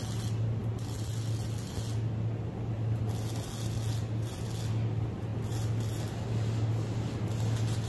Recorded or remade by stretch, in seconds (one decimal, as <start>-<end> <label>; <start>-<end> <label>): 0.0-7.9 recorded